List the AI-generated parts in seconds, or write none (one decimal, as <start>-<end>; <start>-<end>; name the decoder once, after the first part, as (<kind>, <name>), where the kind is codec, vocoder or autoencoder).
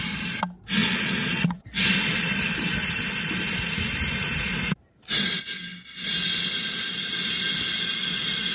0.8-1.6 (vocoder, Vocos)